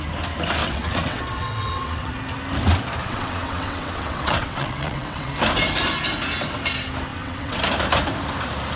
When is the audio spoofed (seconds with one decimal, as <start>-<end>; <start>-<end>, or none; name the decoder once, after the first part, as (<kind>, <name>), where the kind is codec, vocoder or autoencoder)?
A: 0.6-2.1 (vocoder, WaveNeXt); 3.0-5.3; 7.1-7.6